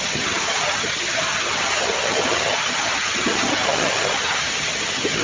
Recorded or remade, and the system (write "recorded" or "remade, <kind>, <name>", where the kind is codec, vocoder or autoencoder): remade, vocoder, HiFi-GAN